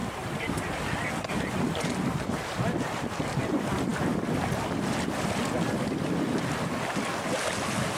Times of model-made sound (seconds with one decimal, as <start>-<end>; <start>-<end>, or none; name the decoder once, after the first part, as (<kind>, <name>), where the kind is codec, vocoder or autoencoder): none